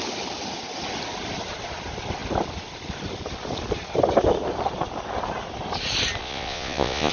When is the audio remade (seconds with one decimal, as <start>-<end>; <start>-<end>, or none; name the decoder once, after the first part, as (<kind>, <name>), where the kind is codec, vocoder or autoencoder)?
6.2-7.1 (vocoder, Vocos)